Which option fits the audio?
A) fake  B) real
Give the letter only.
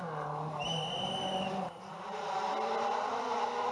B